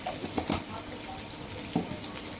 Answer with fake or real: real